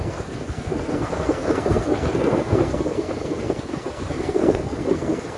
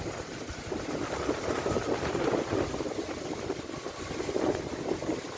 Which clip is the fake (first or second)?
first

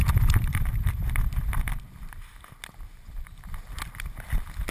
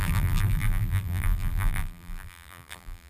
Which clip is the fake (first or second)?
second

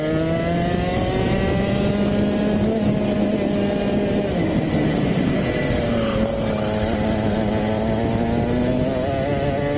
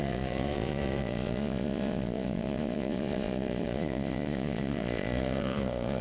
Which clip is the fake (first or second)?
second